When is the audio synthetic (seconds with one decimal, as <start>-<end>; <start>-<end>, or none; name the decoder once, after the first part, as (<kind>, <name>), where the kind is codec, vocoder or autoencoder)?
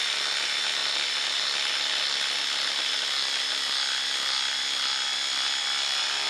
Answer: none